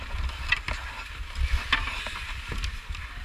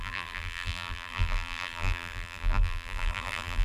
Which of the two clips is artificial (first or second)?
second